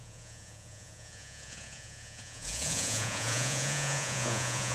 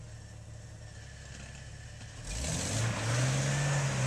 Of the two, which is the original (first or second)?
second